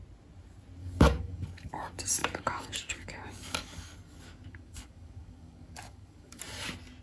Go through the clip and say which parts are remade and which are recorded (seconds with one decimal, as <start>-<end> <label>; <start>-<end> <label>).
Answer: 0.0-0.8 recorded; 0.8-1.7 remade; 1.7-2.2 recorded; 2.2-6.4 remade; 6.4-7.0 recorded